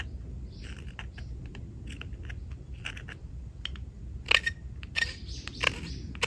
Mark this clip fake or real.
real